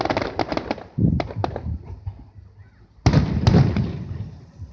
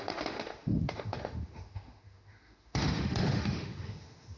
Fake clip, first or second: second